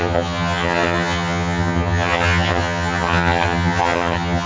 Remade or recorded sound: remade